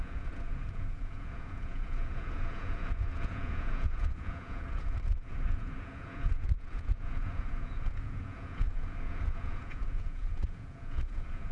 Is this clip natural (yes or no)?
no